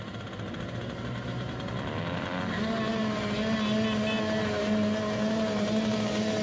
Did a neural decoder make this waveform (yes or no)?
no